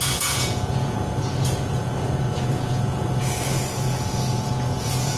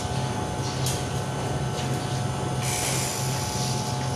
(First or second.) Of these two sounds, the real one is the second